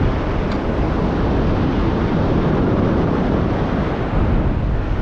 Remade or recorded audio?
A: recorded